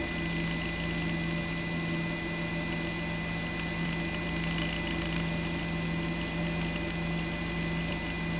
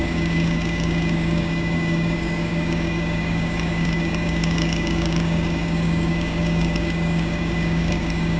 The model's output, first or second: second